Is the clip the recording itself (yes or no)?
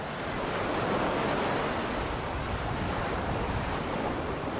yes